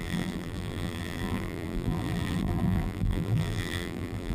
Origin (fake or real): fake